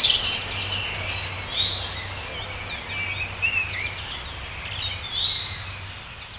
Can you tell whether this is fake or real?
real